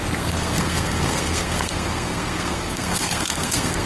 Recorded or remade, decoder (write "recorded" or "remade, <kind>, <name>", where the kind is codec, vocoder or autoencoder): remade, codec, SNAC